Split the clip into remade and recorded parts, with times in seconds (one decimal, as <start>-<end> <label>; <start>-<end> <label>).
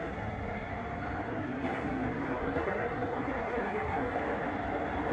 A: 0.0-0.7 remade; 0.7-1.3 recorded; 1.3-4.2 remade; 4.2-5.1 recorded